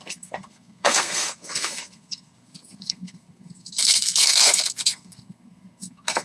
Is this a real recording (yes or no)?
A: no